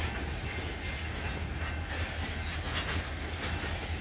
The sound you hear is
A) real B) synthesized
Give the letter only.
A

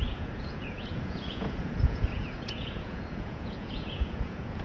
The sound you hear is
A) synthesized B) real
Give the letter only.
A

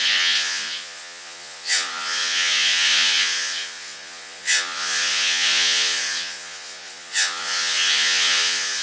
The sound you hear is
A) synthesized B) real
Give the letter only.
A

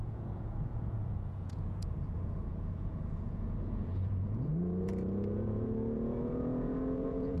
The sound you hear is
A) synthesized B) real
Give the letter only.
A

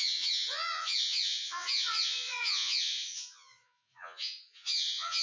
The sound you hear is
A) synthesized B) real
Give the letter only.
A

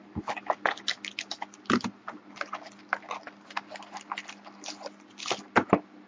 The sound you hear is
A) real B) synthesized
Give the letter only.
A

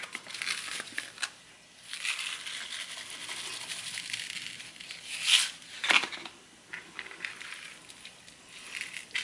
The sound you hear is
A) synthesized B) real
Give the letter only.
B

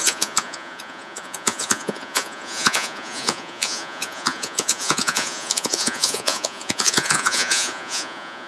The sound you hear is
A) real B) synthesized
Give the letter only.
B